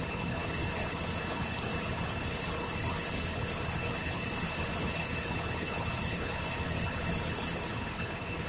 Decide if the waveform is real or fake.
fake